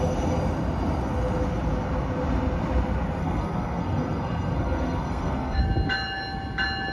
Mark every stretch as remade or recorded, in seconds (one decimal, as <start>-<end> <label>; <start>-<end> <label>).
0.0-3.2 recorded; 3.2-5.6 remade; 5.6-6.9 recorded